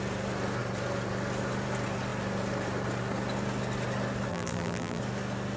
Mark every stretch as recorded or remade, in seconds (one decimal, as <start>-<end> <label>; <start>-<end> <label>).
0.0-4.3 recorded; 4.3-5.0 remade; 5.0-5.6 recorded